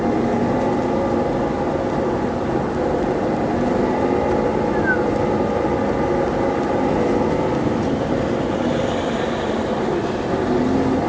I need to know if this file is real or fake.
real